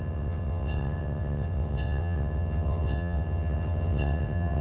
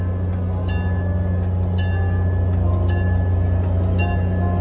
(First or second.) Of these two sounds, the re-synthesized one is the first